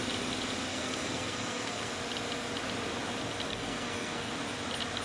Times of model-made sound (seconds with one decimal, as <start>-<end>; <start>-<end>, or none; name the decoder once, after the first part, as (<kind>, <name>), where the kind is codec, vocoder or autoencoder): 0.7-1.9 (codec, SNAC); 3.5-4.3